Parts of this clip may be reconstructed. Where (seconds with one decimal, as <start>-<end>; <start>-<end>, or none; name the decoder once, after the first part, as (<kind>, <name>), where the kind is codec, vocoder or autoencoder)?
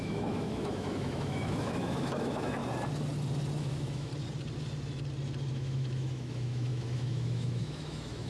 0.0-2.6 (autoencoder, DAC-VAE); 3.6-4.1; 5.5-8.3